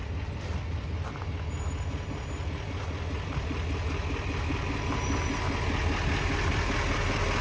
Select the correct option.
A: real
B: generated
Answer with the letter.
A